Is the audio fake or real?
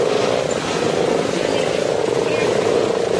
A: real